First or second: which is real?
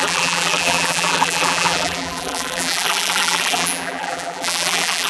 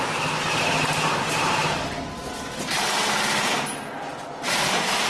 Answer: second